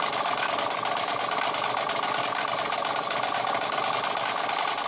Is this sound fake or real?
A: real